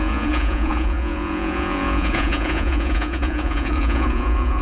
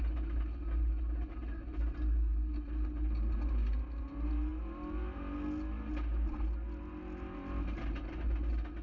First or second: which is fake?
first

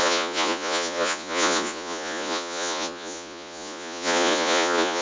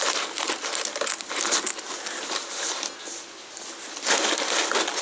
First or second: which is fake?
first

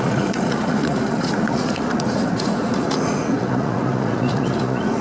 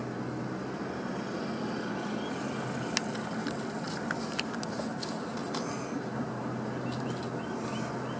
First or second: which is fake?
first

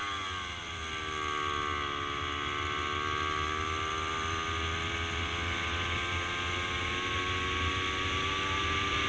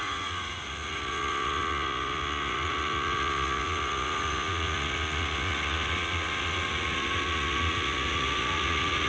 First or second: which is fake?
second